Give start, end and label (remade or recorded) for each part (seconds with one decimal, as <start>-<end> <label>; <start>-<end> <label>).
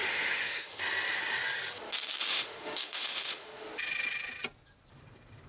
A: 0.0-0.8 remade; 0.8-2.3 recorded; 2.3-3.6 remade; 3.6-5.5 recorded